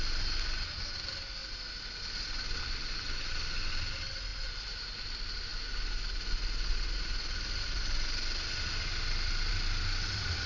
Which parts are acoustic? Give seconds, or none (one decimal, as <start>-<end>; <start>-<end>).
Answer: 0.0-4.3; 4.8-10.5

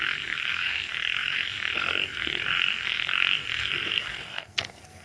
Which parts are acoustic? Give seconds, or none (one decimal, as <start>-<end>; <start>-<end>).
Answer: none

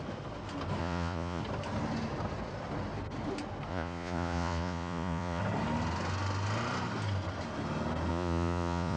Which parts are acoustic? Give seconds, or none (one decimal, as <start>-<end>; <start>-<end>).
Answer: 0.0-0.8; 1.4-3.7; 5.4-8.1

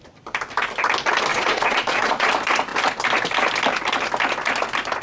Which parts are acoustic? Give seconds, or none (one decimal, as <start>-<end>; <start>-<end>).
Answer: 0.0-1.3; 2.3-5.0

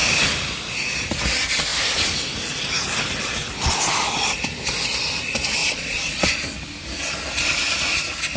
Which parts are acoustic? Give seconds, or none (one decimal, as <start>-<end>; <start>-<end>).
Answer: 0.0-5.6; 6.3-8.4

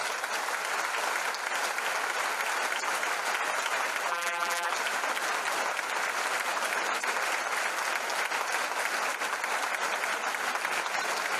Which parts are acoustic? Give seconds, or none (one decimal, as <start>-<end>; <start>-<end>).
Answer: 0.0-4.1; 4.7-11.4

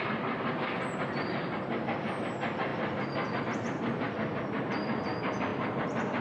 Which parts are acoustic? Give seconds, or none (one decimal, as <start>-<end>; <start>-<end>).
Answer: 0.0-6.2

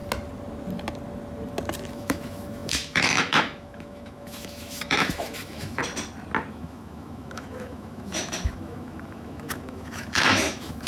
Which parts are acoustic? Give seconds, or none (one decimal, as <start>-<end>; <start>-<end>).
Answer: 0.0-1.9; 5.8-6.5